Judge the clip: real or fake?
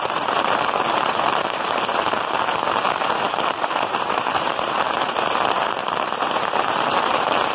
fake